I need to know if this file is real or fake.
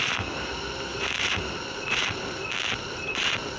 real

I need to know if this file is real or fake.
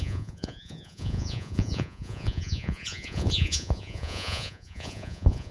fake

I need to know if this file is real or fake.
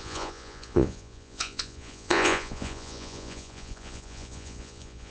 fake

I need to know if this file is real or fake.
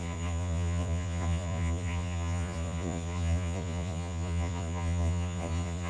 fake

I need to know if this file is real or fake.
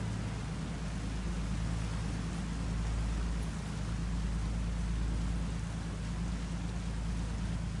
real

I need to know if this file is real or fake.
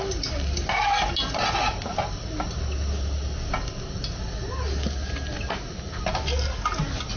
real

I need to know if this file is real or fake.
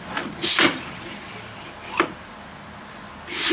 real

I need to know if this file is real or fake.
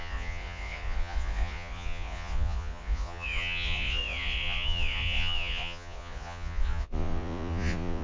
fake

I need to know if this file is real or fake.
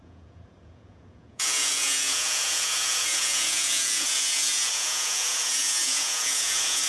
fake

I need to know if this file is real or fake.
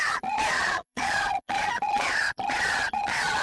fake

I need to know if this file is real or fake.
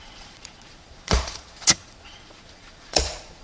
fake